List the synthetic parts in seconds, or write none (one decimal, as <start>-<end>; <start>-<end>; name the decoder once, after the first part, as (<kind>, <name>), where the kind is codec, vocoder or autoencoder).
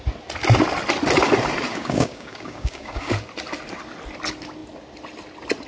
1.7-3.1 (codec, DAC)